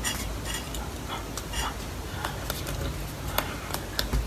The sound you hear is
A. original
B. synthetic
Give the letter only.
A